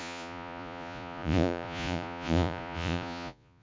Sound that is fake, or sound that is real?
fake